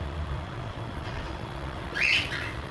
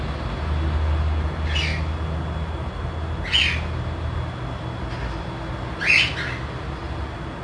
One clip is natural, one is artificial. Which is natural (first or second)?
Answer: second